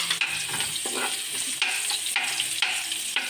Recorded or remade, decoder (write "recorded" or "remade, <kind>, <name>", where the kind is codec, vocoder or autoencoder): recorded